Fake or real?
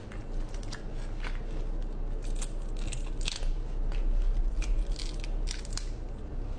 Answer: real